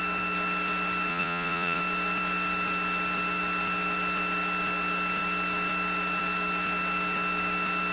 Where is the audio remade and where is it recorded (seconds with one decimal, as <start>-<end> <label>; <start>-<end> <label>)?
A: 0.0-1.1 recorded; 1.1-1.8 remade; 1.8-7.9 recorded

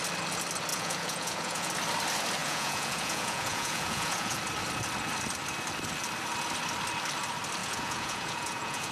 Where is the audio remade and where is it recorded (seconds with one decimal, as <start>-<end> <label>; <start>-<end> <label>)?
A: 0.0-0.7 recorded; 0.7-1.7 remade; 1.7-2.4 recorded; 2.4-4.4 remade; 4.4-7.6 recorded; 7.6-8.9 remade

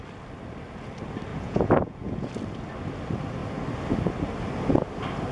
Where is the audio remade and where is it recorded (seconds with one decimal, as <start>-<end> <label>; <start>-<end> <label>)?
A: 0.0-1.3 recorded; 1.3-2.3 remade; 2.3-5.3 recorded

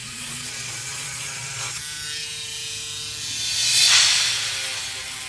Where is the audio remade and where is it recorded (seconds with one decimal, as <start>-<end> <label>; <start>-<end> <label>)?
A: 0.0-1.8 remade; 1.8-3.7 recorded; 3.7-4.3 remade; 4.3-5.3 recorded

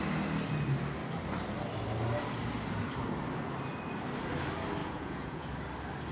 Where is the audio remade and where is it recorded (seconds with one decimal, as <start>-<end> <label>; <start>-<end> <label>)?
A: 0.0-4.8 recorded; 4.8-5.5 remade; 5.5-6.1 recorded

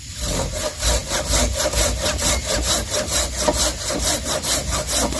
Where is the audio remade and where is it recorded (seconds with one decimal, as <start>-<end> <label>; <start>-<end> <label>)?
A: 0.0-5.2 recorded

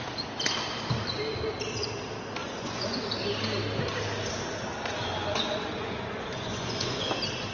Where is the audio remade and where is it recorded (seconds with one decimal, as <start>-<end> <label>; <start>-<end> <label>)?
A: 0.0-2.4 recorded; 2.4-3.0 remade; 3.0-5.0 recorded; 5.0-7.1 remade; 7.1-7.5 recorded